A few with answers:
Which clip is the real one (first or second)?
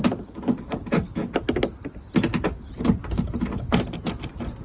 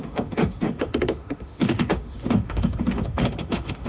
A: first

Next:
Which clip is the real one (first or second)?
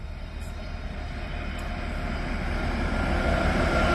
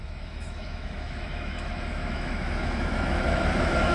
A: first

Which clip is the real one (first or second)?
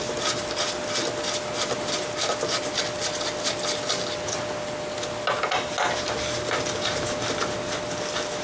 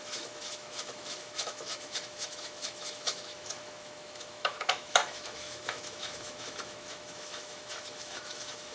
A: first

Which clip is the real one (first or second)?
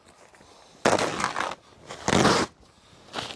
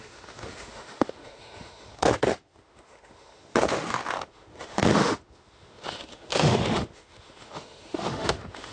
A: first